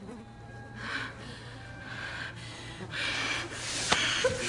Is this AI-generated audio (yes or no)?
no